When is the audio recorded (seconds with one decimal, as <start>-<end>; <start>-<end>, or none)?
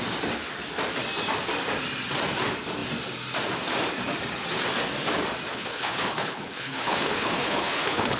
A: 0.0-5.5